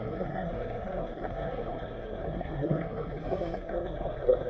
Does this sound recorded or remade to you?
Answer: remade